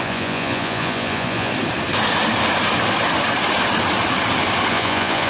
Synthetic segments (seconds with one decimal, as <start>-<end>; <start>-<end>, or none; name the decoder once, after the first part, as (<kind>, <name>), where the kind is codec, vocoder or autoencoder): 0.0-1.5 (vocoder, Vocos); 4.7-5.3